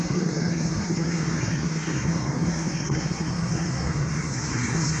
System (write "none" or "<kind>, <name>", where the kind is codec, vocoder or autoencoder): codec, SNAC